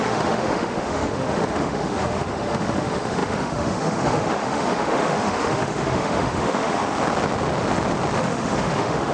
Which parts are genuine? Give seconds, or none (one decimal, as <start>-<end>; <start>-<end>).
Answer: 6.8-8.2